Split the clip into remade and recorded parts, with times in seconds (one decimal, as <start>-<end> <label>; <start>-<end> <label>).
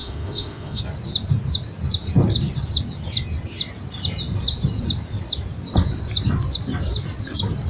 0.0-0.8 remade; 0.8-7.7 recorded